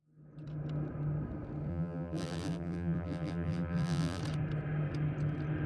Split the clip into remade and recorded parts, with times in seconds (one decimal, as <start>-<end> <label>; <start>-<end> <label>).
0.0-1.7 recorded; 1.7-4.2 remade; 4.2-5.7 recorded